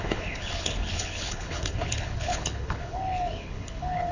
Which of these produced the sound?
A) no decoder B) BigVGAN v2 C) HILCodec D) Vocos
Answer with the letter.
C